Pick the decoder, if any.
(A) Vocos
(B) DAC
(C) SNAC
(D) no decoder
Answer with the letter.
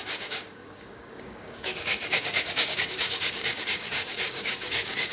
B